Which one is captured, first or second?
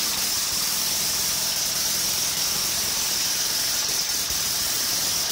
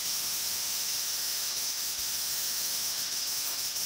first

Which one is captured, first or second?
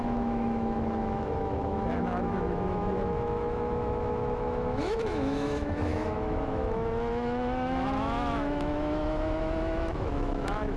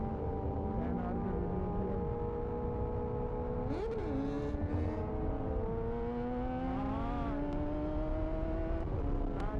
second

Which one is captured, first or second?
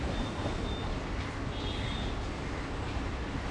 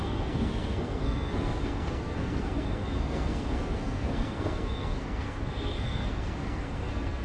first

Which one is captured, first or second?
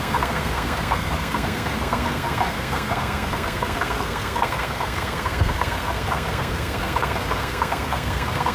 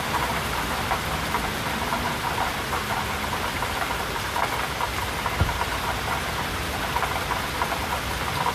second